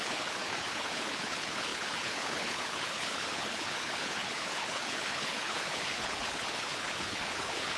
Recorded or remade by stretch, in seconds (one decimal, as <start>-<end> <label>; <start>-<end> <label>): 0.0-7.8 remade